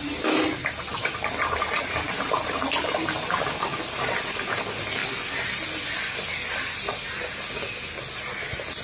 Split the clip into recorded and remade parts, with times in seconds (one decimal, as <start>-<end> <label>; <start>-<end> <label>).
0.0-0.9 recorded; 0.9-2.8 remade; 2.8-3.7 recorded; 3.7-4.6 remade; 4.6-8.8 recorded